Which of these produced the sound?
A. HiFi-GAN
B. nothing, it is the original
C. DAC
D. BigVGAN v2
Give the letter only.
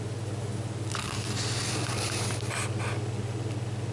B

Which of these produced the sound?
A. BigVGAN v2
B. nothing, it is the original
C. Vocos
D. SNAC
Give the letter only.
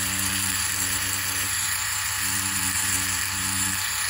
A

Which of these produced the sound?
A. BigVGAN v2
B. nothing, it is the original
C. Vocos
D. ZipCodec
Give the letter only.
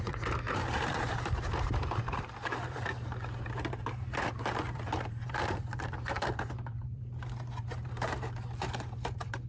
A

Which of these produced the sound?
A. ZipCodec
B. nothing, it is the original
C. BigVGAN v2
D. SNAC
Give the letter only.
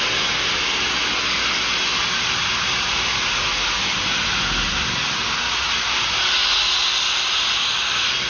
B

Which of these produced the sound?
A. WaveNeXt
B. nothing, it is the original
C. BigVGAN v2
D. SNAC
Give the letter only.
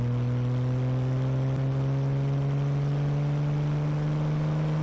B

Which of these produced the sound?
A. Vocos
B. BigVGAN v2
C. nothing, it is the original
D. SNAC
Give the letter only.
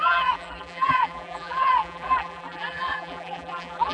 B